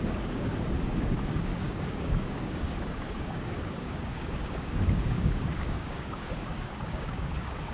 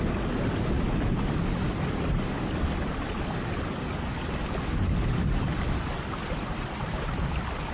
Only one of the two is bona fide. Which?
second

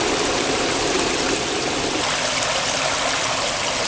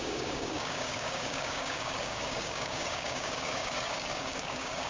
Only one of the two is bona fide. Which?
first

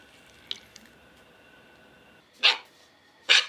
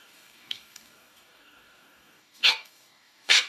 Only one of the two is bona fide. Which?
first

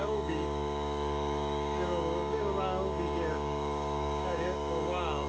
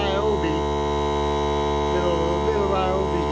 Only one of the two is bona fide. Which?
second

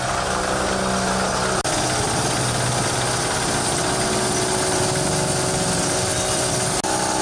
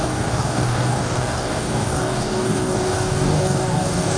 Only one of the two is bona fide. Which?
first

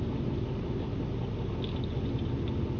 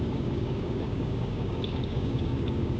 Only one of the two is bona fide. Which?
first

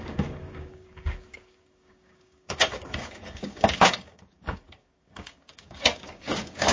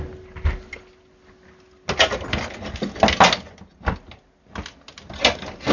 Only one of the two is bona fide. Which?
second